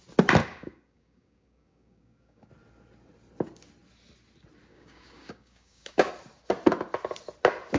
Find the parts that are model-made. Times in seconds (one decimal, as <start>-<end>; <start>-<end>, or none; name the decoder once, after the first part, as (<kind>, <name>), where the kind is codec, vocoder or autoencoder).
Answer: 0.4-2.5 (codec, DAC); 4.7-6.1